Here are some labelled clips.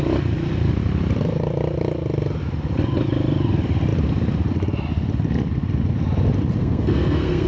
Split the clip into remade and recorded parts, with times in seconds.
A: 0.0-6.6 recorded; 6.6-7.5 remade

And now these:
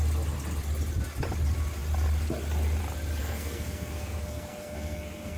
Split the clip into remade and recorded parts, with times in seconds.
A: 0.0-3.2 recorded; 3.2-5.4 remade

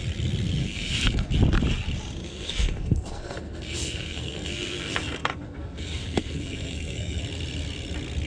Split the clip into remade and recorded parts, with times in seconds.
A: 0.0-0.6 recorded; 0.6-1.3 remade; 1.3-2.2 recorded; 2.2-7.2 remade; 7.2-8.3 recorded

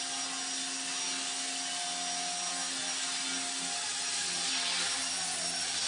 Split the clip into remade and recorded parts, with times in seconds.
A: 0.0-5.9 recorded